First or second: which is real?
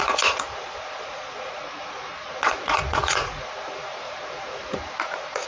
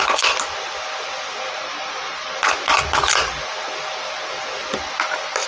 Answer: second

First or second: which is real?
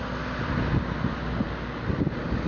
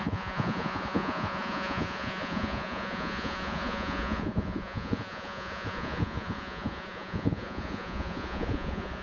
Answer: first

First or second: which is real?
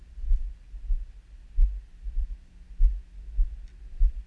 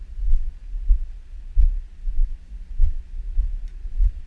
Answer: first